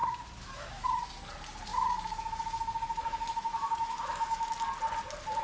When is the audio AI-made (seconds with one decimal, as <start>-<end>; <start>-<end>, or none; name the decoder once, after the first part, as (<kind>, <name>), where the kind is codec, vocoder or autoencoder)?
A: 0.0-1.0 (autoencoder, DAC-VAE); 1.7-4.5